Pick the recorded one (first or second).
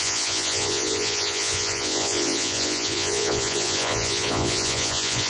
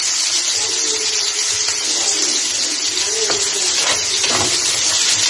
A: second